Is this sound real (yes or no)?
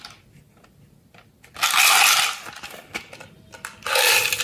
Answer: yes